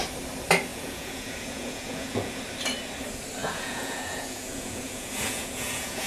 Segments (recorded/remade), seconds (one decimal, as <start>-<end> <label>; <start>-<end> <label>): 0.0-0.7 recorded; 0.7-2.4 remade; 2.4-3.4 recorded; 3.4-6.1 remade